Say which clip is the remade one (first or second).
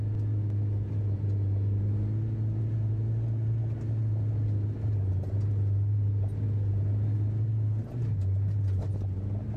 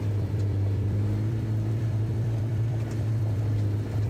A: second